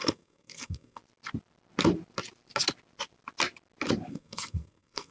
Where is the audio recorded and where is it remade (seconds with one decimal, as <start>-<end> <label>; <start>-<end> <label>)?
0.0-1.0 remade; 1.0-4.1 recorded; 4.1-5.1 remade